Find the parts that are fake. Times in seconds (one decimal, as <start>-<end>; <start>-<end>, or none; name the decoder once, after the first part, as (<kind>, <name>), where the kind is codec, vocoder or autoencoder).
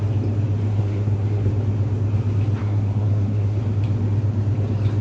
0.7-1.5 (codec, SNAC); 2.6-3.6